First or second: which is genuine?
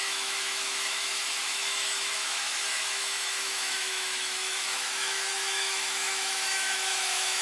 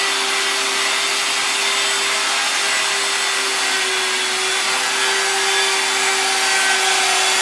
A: second